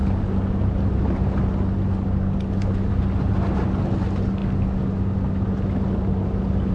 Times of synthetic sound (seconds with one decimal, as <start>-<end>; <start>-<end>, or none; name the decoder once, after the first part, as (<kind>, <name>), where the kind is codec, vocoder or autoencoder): none

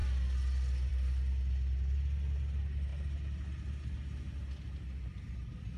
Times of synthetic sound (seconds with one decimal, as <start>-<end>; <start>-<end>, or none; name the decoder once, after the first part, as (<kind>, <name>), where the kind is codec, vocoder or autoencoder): none